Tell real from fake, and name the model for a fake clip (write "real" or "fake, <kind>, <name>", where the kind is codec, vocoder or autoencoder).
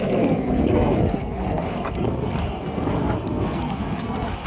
fake, codec, SNAC